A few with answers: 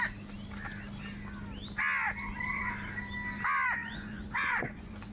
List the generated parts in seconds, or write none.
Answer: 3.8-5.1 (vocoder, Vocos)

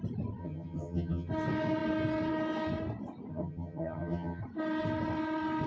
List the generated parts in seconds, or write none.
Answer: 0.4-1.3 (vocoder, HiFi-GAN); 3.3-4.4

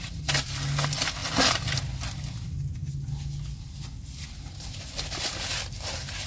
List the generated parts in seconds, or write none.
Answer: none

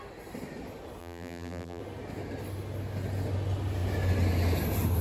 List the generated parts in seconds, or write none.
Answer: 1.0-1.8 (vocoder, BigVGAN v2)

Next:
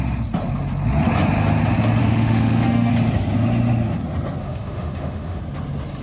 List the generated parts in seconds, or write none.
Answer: 2.0-2.9 (autoencoder, DAC-VAE); 4.4-5.4